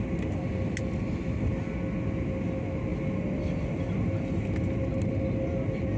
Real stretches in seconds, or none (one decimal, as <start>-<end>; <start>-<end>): 0.0-6.0